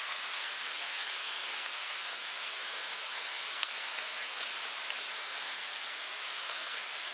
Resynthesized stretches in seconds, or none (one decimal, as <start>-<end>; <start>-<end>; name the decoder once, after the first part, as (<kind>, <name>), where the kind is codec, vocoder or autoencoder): 0.0-4.5 (codec, SNAC); 5.1-7.1